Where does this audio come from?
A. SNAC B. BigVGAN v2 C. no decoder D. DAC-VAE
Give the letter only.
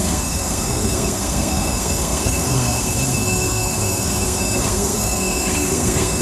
A